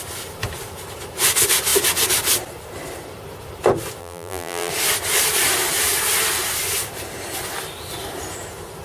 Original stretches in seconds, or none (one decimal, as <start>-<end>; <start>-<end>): 0.0-4.0; 4.7-8.8